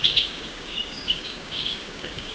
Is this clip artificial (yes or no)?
yes